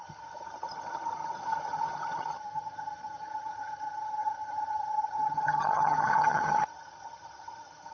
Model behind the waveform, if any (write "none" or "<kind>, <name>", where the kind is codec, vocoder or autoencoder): vocoder, HiFi-GAN